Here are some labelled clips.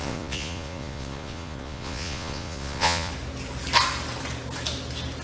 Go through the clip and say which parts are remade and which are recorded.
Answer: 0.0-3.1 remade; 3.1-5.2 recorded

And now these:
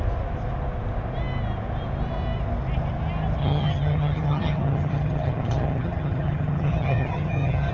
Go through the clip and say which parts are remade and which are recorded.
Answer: 0.0-3.4 recorded; 3.4-7.7 remade

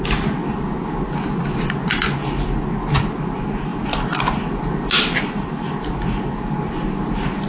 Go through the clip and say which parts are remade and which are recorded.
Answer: 0.0-7.5 recorded